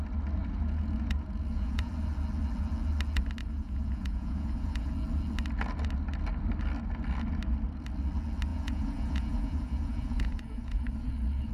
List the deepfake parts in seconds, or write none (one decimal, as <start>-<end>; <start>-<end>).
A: 0.4-1.9; 3.4-4.9; 8.5-11.5